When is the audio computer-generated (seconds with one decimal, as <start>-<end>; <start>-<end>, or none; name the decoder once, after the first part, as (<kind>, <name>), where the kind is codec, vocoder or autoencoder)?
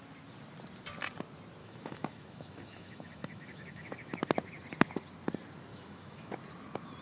1.6-3.9 (autoencoder, DAC-VAE); 5.7-6.3